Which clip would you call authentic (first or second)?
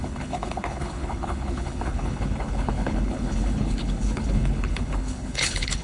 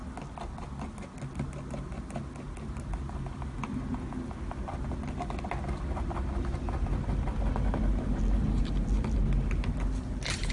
second